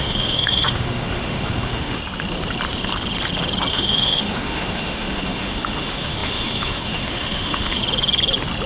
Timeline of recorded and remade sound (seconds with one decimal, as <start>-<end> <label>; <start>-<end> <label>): 0.0-2.0 remade; 2.0-3.7 recorded; 3.7-7.8 remade; 7.8-8.7 recorded